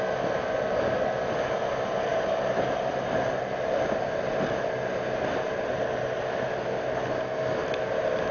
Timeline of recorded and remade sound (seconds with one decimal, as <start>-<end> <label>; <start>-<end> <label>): 0.0-8.3 recorded